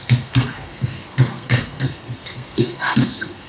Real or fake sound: fake